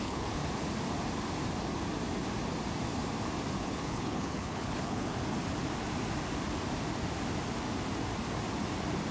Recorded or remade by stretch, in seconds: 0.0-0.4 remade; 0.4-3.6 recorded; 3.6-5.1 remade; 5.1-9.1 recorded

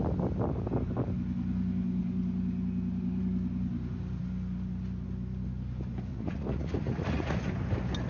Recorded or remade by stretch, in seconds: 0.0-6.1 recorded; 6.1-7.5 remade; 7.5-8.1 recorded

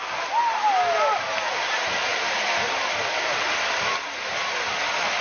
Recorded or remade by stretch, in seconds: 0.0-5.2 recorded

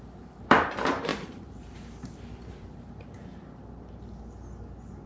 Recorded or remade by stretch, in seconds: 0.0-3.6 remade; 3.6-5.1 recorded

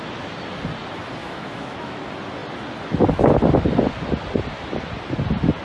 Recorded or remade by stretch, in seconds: 0.0-1.2 recorded; 1.2-2.0 remade; 2.0-5.6 recorded